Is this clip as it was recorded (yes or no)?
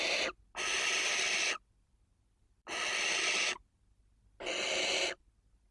yes